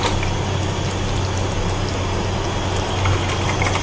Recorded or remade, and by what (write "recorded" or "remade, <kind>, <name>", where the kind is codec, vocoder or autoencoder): recorded